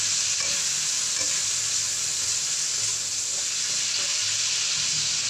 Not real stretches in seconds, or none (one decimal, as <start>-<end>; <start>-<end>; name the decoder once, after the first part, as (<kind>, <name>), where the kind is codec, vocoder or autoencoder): none